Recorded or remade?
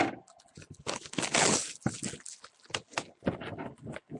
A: recorded